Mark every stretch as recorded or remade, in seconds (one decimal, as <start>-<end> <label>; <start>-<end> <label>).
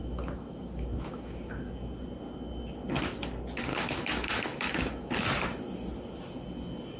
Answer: 0.0-1.4 remade; 1.4-3.7 recorded; 3.7-5.1 remade; 5.1-7.0 recorded